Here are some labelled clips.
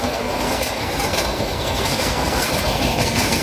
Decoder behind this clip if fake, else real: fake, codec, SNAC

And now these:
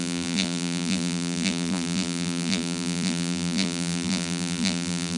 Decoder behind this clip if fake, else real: fake, vocoder, BigVGAN v2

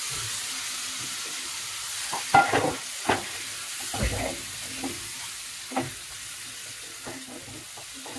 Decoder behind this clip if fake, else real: real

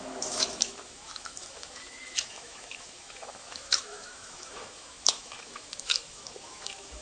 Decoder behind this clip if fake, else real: fake, autoencoder, DAC-VAE